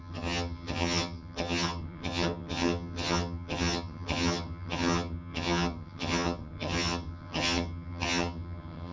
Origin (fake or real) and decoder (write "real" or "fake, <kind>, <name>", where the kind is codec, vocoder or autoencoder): fake, vocoder, HiFi-GAN